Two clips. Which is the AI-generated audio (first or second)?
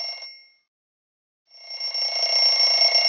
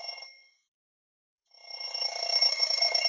second